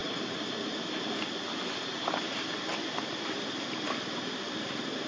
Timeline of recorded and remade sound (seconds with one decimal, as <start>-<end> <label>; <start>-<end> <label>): 0.0-3.1 recorded; 3.1-5.1 remade